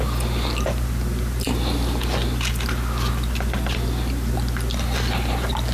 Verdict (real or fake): real